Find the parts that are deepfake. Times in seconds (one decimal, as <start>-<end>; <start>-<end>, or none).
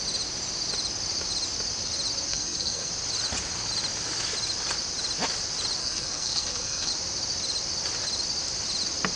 2.3-2.9; 5.8-6.9